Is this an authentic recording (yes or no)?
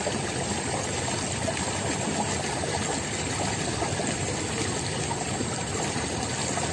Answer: yes